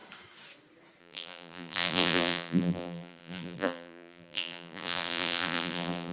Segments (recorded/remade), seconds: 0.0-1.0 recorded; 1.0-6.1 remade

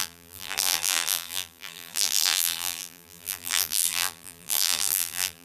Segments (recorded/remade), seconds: 0.0-5.4 remade

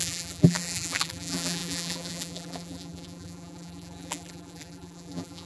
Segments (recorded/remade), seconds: 0.0-5.5 remade

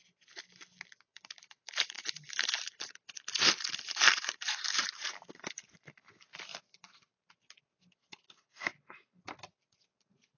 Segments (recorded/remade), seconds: 0.0-1.1 recorded; 1.1-5.5 remade; 5.5-6.5 recorded; 6.5-7.2 remade; 7.2-10.4 recorded

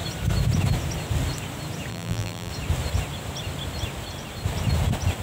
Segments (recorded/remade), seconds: 0.0-1.9 recorded; 1.9-2.5 remade; 2.5-5.2 recorded

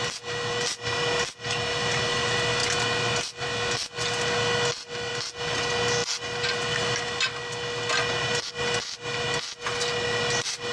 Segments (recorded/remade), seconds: 0.0-10.7 recorded

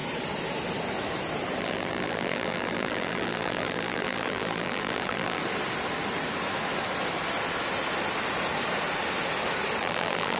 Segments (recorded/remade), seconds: 0.0-1.6 recorded; 1.6-5.4 remade; 5.4-9.8 recorded; 9.8-10.4 remade